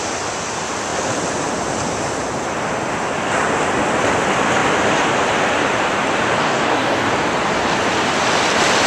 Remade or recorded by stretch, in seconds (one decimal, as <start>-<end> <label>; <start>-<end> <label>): 0.0-6.4 recorded; 6.4-7.1 remade; 7.1-8.9 recorded